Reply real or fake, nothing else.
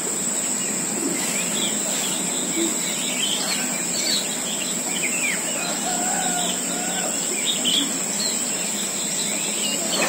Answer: real